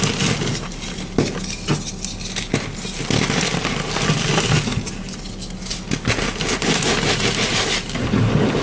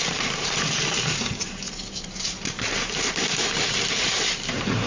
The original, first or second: first